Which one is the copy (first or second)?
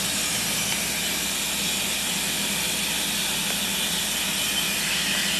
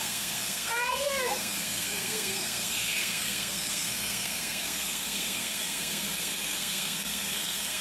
second